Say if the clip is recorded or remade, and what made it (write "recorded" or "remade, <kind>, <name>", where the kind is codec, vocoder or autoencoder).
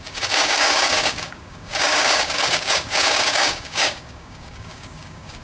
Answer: remade, codec, DAC